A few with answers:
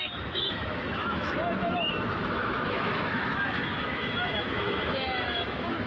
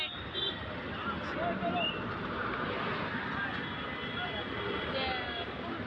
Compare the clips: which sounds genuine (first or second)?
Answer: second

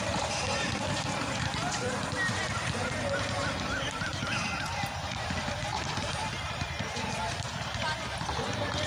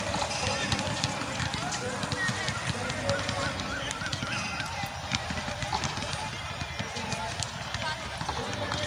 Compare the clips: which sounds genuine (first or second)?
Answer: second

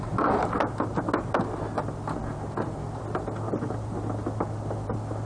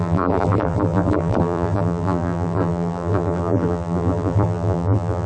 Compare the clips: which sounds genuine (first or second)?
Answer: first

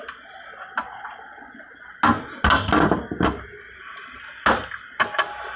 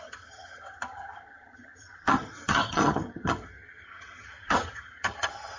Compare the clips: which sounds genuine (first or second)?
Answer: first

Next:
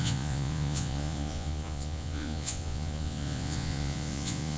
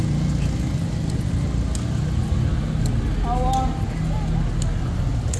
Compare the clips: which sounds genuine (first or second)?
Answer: second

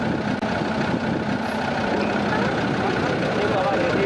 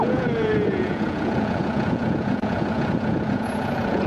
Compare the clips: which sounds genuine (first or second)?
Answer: first